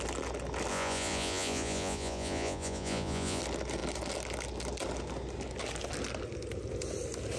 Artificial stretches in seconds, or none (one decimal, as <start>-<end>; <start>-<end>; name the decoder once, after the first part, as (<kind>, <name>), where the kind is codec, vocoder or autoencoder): 0.7-3.4 (vocoder, Vocos)